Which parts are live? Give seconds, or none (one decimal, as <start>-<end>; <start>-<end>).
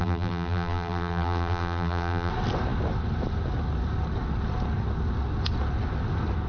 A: 2.3-6.5